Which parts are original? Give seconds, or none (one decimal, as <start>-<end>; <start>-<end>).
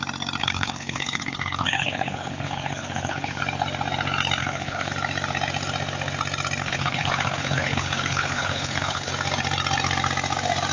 0.0-0.4; 3.4-4.4; 4.9-6.6; 9.1-10.7